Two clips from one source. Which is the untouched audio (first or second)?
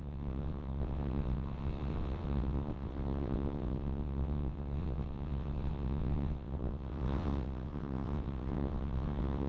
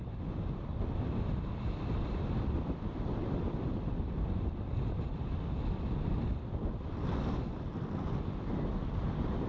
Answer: second